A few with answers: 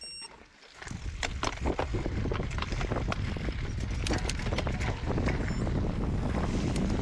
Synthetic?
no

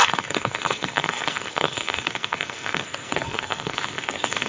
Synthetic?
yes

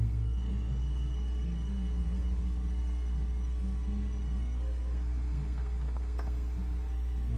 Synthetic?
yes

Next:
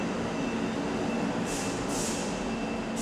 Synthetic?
no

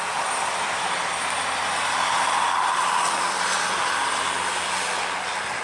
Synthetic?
no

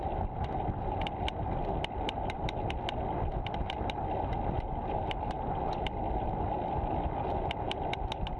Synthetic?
no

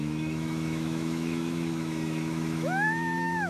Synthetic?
yes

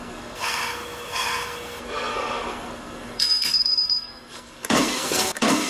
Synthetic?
yes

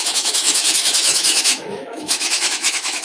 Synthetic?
yes